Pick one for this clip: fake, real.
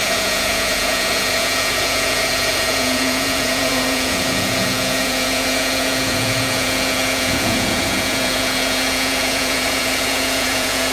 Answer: fake